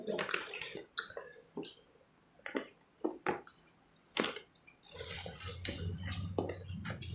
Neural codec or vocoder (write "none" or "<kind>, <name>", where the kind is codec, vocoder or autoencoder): none